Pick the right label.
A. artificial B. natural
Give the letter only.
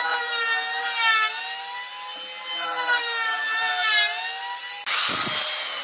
B